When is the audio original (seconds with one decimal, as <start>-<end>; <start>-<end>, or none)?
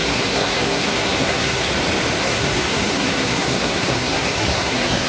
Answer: 1.7-2.2